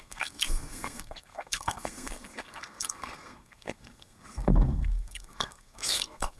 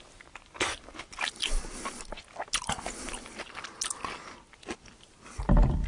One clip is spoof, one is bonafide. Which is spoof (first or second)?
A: first